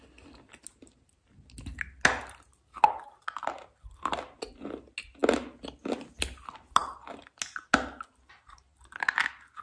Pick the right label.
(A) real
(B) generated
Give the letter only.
A